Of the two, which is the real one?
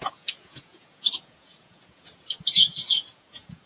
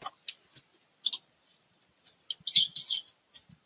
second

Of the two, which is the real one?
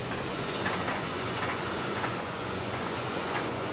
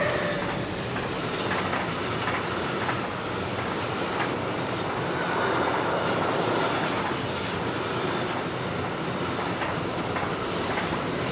second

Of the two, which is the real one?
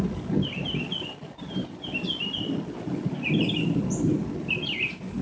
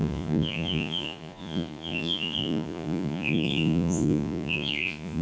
first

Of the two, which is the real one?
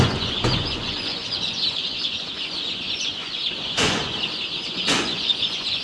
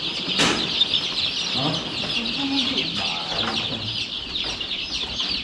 second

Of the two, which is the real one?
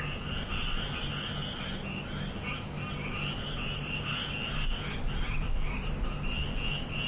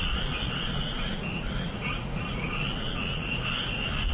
first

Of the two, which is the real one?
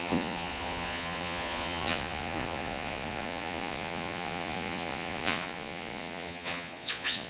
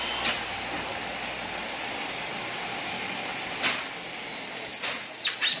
second